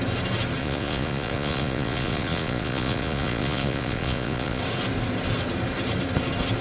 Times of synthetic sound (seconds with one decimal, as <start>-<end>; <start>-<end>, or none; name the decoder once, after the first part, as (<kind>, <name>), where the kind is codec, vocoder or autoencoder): 0.6-4.6 (vocoder, Vocos)